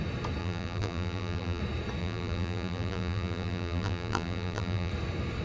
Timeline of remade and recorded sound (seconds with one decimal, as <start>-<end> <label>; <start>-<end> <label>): 0.0-0.4 recorded; 0.4-1.6 remade; 1.6-2.0 recorded; 2.0-4.9 remade; 4.9-5.4 recorded